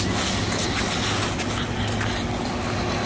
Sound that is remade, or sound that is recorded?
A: recorded